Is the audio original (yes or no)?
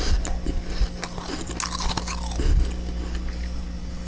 yes